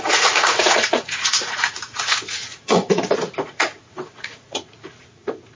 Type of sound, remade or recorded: remade